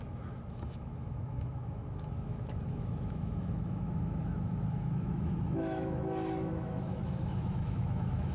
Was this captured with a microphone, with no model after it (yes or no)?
no